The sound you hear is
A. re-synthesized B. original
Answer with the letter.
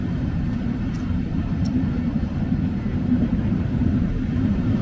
A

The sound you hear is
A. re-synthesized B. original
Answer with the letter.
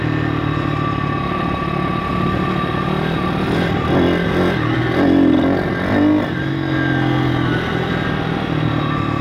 B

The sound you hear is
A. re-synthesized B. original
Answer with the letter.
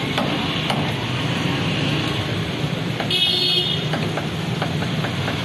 B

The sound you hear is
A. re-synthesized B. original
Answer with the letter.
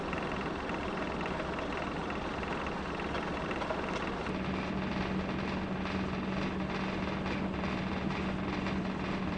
B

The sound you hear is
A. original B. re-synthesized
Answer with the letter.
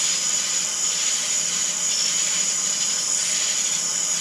A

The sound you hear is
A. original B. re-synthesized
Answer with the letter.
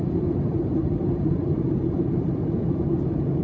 B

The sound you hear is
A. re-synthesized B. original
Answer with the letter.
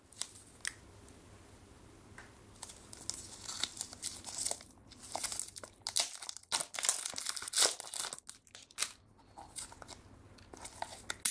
B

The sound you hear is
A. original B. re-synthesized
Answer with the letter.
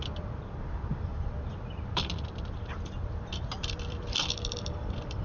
B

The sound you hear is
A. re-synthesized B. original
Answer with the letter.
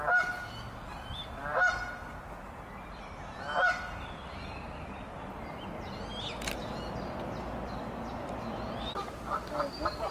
B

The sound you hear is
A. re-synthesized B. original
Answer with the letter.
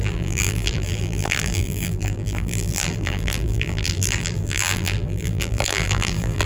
A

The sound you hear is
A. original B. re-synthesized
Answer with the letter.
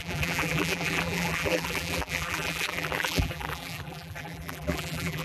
B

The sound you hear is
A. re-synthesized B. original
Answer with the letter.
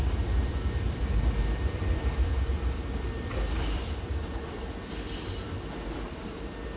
A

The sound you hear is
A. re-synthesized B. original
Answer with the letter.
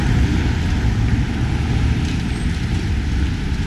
B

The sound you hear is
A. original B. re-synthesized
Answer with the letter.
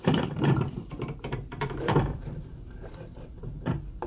B